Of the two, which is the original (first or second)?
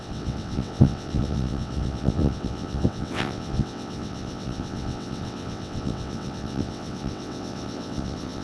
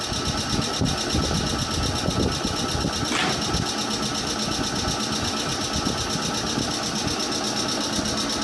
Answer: second